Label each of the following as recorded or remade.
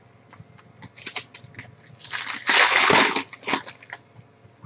recorded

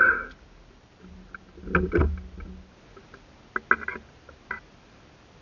recorded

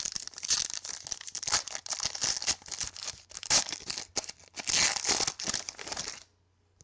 recorded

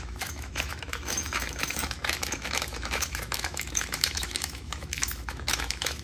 remade